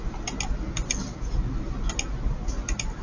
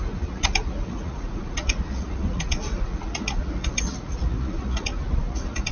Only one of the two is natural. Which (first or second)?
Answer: first